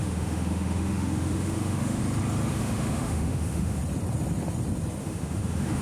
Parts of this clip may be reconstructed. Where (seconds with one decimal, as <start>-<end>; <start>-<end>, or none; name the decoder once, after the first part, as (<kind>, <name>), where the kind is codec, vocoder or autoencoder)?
0.0-2.0 (autoencoder, DAC-VAE); 2.5-3.8; 5.0-5.8